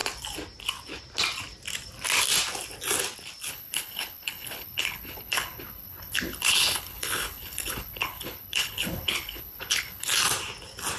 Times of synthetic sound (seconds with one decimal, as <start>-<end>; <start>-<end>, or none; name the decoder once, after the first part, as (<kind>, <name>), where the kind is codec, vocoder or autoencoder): 3.5-10.1 (codec, HILCodec)